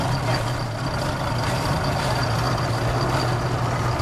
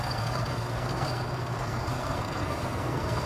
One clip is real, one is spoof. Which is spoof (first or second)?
second